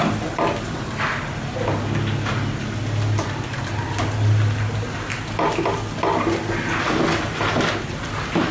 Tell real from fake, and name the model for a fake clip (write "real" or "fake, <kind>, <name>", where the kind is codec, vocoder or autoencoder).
real